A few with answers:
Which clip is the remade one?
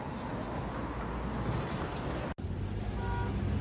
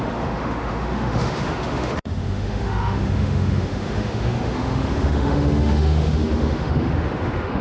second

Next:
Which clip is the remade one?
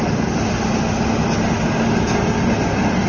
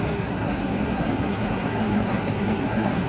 second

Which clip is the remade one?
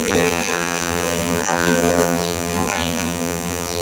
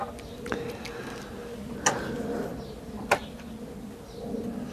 first